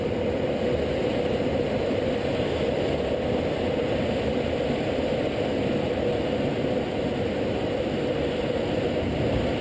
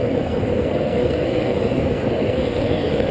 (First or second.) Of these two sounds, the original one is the first